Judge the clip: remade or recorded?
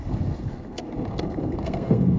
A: remade